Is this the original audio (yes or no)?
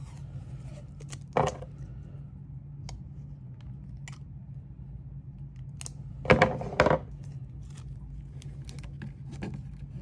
yes